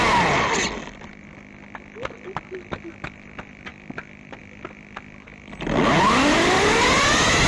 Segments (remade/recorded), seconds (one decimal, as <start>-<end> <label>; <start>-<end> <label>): 0.0-7.5 recorded